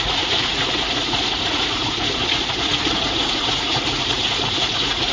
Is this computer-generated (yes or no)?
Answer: yes